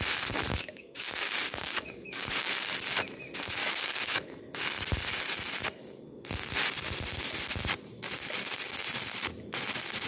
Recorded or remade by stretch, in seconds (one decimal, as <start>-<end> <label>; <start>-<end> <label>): 0.0-0.5 recorded; 0.5-2.5 remade; 2.5-3.6 recorded; 3.6-4.4 remade; 4.4-10.1 recorded